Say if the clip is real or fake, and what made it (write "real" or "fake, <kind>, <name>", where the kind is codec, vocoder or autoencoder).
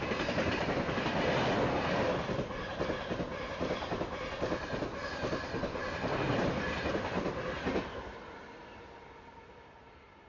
real